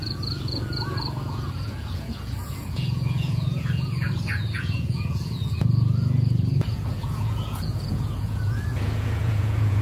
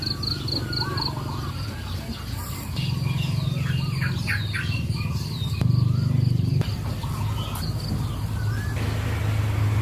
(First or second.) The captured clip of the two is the second